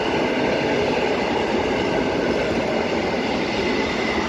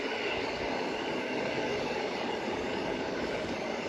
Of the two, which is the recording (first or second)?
first